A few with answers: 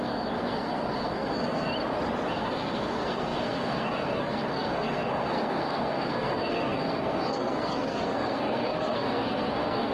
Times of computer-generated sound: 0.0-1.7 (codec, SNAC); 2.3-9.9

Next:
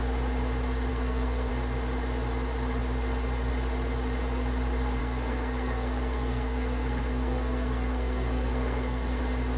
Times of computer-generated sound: 0.9-1.5 (codec, SNAC); 5.0-9.2

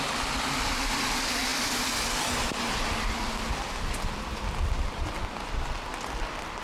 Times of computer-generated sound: none